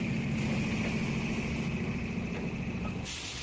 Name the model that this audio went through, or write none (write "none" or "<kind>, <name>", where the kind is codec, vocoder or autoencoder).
none